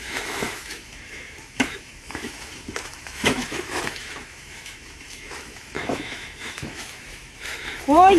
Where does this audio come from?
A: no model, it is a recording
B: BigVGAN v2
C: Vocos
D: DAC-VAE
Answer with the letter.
D